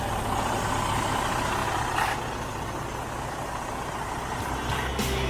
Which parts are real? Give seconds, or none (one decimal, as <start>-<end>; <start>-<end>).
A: 0.0-5.3